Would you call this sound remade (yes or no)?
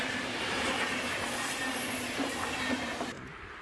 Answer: no